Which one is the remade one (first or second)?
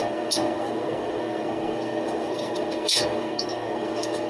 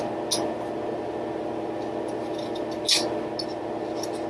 first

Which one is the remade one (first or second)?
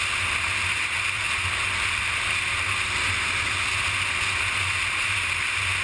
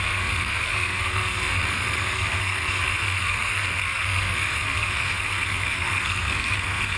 second